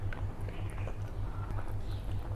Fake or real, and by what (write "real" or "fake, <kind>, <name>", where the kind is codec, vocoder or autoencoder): real